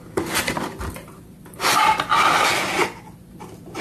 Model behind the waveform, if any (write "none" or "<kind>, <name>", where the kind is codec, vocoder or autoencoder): none